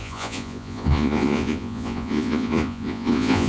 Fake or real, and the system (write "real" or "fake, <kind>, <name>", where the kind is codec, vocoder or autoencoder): fake, vocoder, Vocos